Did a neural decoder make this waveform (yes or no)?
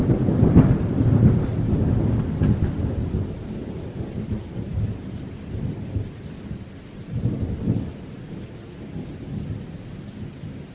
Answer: no